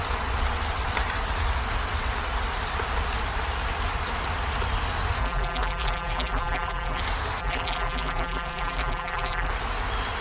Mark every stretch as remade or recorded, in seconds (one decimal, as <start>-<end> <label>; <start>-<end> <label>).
0.0-5.2 recorded; 5.2-7.0 remade; 7.0-7.4 recorded; 7.4-9.5 remade; 9.5-10.2 recorded